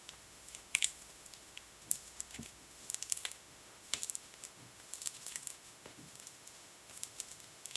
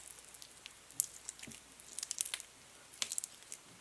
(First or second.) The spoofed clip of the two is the first